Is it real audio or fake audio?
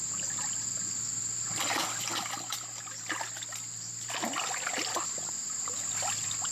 real